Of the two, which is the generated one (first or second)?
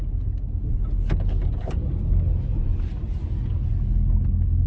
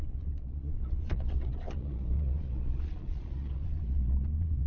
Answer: second